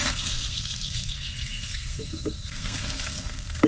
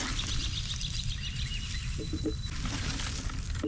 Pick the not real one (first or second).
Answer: first